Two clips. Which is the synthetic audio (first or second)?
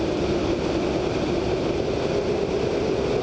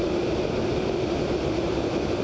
first